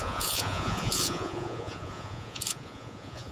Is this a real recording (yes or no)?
no